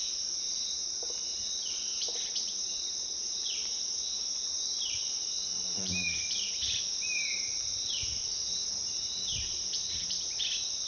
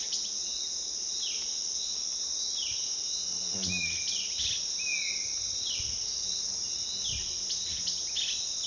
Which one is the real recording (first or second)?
second